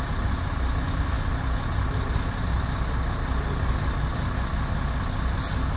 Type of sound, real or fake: real